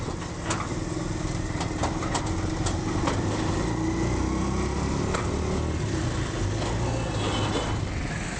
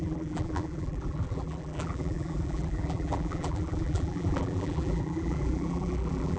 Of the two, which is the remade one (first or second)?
second